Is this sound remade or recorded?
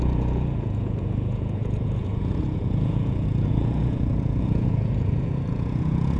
remade